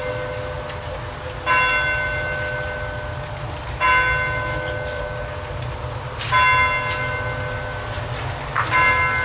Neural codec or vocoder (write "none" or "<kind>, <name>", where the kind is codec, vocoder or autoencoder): none